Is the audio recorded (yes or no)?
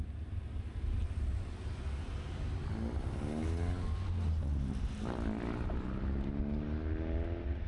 yes